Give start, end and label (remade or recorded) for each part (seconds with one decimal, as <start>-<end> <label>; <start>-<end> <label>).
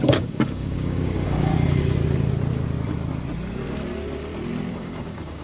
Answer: 0.0-1.5 remade; 1.5-4.7 recorded; 4.7-5.4 remade